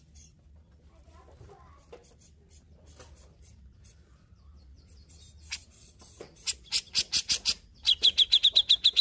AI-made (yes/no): no